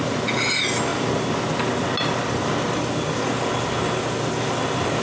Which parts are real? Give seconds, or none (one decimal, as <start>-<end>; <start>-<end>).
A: 0.0-5.0